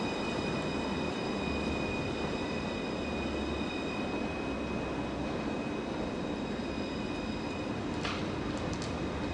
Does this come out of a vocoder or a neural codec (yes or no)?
no